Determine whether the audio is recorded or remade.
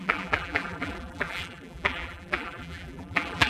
remade